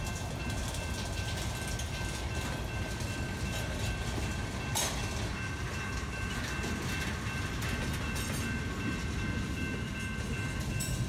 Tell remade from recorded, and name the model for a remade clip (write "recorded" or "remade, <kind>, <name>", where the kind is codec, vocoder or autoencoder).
recorded